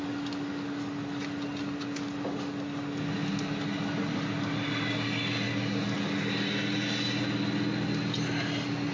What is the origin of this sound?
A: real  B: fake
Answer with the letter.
A